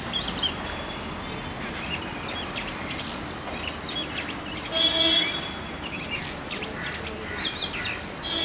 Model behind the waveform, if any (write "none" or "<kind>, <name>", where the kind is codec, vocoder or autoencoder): none